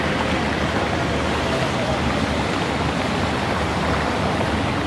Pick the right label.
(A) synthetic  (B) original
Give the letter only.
B